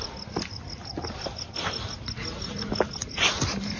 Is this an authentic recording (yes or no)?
yes